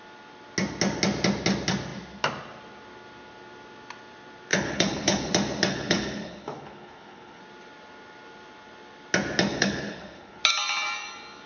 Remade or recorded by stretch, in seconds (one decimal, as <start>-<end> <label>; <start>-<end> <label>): 0.0-4.5 recorded; 4.5-5.3 remade; 5.3-5.7 recorded; 5.7-7.4 remade; 7.4-9.5 recorded; 9.5-10.4 remade; 10.4-11.5 recorded